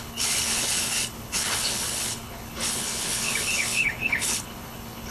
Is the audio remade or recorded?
remade